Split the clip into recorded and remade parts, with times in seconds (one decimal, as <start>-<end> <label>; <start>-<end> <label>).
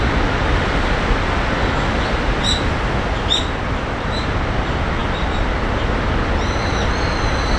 0.0-7.6 recorded